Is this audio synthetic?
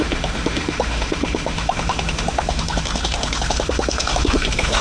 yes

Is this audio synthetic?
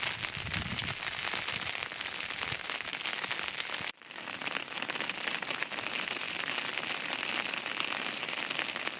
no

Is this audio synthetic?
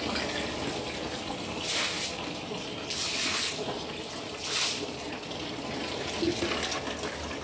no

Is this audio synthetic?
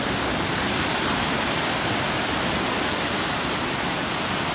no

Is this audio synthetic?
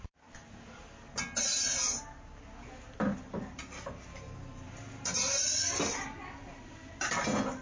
no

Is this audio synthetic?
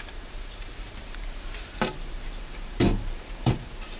yes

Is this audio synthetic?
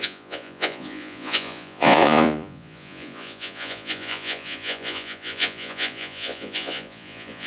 yes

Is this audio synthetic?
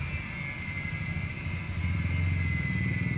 no